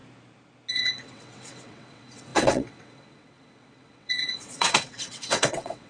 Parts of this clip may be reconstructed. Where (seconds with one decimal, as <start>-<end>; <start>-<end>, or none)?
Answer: 0.7-5.9